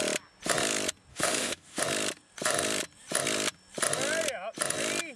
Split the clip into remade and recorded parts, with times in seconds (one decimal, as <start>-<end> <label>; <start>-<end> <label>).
0.0-1.1 recorded; 1.1-1.8 remade; 1.8-5.2 recorded